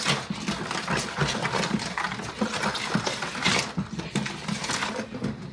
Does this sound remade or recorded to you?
recorded